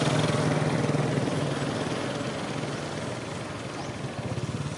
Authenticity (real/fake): real